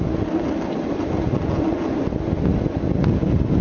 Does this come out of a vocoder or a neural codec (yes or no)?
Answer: no